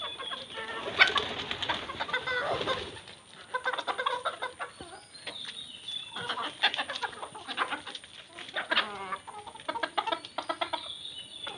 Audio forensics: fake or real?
real